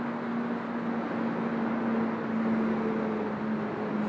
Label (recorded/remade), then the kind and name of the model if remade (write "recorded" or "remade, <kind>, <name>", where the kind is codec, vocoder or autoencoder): recorded